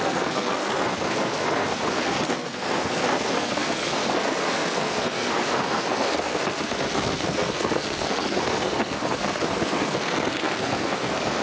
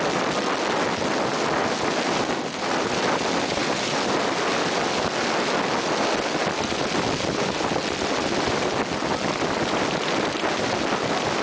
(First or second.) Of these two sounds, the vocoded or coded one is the first